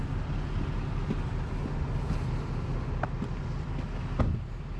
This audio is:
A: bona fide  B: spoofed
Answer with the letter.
A